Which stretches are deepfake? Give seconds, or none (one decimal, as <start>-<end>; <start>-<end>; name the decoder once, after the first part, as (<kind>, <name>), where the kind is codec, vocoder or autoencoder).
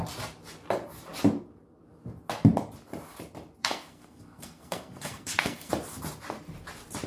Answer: 3.6-5.7 (codec, SNAC)